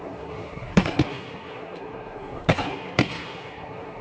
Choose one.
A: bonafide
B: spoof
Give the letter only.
B